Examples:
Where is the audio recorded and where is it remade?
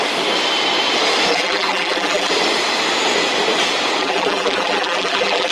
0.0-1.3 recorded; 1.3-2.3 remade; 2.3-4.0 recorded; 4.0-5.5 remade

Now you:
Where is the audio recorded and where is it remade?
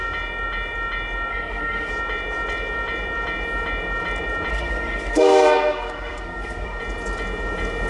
0.0-1.3 recorded; 1.3-1.9 remade; 1.9-4.5 recorded; 4.5-6.8 remade; 6.8-7.9 recorded